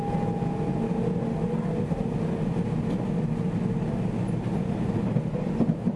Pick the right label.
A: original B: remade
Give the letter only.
A